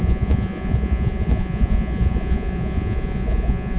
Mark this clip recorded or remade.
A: remade